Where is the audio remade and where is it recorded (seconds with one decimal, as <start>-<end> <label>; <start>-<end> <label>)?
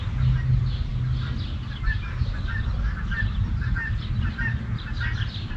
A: 0.0-5.6 recorded